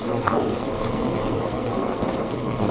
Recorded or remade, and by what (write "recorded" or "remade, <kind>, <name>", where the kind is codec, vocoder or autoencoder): remade, codec, SNAC